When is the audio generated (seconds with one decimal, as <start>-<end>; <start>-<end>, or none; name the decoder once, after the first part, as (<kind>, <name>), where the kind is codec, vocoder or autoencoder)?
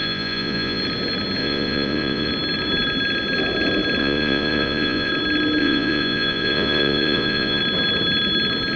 0.0-0.8 (vocoder, Vocos); 1.4-2.3; 4.0-5.1; 5.6-7.6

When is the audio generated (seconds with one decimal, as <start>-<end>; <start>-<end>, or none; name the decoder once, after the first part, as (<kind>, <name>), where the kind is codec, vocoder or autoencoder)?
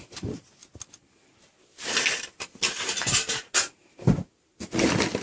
none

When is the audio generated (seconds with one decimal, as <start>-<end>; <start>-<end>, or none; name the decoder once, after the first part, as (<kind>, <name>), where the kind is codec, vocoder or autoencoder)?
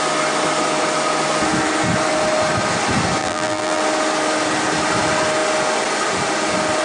3.2-3.8 (vocoder, BigVGAN v2)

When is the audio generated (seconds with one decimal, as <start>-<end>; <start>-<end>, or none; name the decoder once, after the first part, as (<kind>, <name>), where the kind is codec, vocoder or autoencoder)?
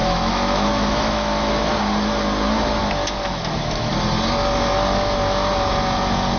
0.0-1.8 (autoencoder, DAC-VAE); 2.8-3.9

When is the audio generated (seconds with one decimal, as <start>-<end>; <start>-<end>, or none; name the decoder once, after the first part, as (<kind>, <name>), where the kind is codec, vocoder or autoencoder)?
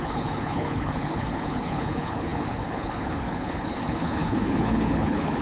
0.0-5.4 (codec, HILCodec)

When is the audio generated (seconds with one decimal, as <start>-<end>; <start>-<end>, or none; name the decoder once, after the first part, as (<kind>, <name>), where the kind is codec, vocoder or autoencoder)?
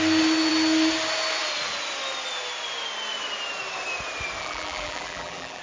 4.4-5.6 (vocoder, BigVGAN v2)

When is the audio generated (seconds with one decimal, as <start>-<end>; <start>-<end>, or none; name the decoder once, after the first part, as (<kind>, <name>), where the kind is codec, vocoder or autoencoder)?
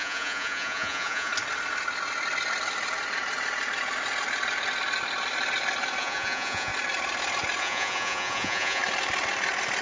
0.0-1.3 (vocoder, Vocos); 6.0-6.7; 7.6-8.8